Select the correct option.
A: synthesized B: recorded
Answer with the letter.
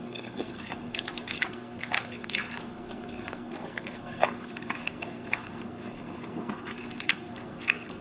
A